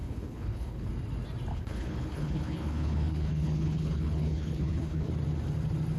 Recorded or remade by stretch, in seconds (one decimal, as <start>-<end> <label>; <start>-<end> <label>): 0.0-0.9 remade; 0.9-1.5 recorded; 1.5-5.1 remade; 5.1-6.0 recorded